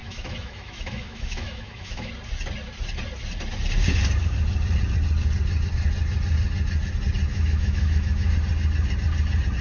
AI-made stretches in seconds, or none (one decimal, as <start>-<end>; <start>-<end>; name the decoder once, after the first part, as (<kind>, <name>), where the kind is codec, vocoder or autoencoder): 0.0-2.1 (autoencoder, DAC-VAE); 7.3-8.3